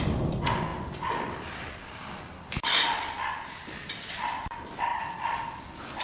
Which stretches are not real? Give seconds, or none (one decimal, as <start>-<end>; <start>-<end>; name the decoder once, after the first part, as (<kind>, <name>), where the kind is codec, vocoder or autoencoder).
none